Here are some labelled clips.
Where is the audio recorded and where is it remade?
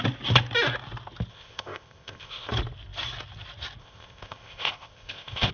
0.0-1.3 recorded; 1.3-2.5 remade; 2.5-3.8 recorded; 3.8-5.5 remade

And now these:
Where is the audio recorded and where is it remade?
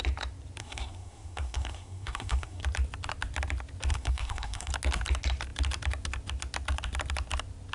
0.0-0.6 recorded; 0.6-2.6 remade; 2.6-3.9 recorded; 3.9-4.7 remade; 4.7-7.7 recorded